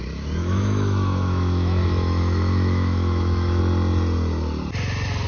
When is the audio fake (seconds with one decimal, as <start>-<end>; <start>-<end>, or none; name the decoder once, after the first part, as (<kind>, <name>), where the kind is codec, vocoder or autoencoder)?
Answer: 0.4-3.6 (autoencoder, DAC-VAE)